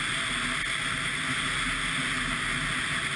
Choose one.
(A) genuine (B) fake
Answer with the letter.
A